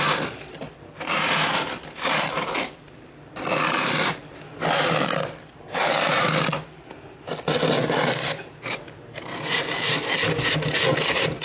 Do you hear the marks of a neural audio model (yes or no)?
yes